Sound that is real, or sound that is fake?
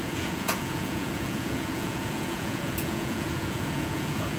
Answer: fake